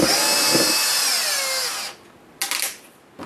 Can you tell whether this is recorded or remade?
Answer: recorded